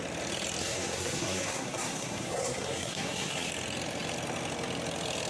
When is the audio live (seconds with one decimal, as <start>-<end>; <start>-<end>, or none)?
0.0-0.6; 3.5-5.3